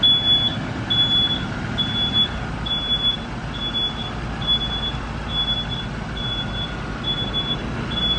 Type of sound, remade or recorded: recorded